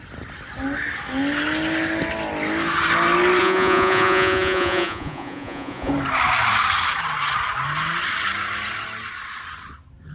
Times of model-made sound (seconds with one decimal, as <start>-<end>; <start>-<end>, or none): 3.4-5.9